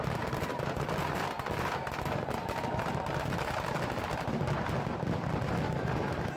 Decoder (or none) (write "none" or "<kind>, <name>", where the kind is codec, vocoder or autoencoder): none